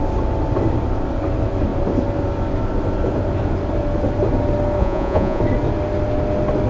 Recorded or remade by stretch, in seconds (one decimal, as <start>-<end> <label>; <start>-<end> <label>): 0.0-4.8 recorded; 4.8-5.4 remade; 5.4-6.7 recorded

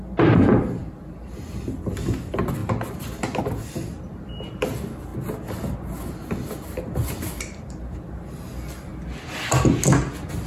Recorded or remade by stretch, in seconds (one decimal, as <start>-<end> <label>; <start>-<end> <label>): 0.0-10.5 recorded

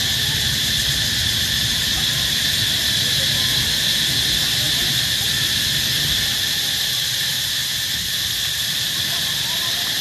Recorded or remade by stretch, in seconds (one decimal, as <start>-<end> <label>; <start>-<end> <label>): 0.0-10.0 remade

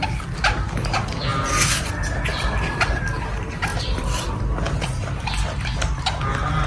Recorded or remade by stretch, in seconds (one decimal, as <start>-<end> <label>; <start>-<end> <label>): 0.0-1.3 recorded; 1.3-1.9 remade; 1.9-2.3 recorded; 2.3-2.9 remade; 2.9-3.7 recorded; 3.7-4.2 remade; 4.2-6.7 recorded

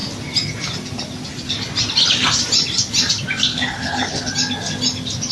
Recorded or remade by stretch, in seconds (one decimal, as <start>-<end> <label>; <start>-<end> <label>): 0.0-3.5 recorded; 3.5-4.3 remade; 4.3-5.3 recorded